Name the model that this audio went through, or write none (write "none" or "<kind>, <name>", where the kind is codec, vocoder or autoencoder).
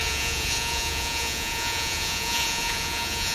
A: vocoder, Vocos